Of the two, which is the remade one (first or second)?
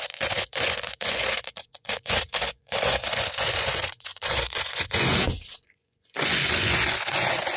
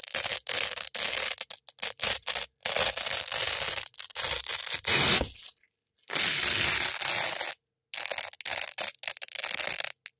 first